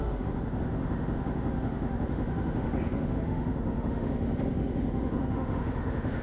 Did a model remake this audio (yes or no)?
yes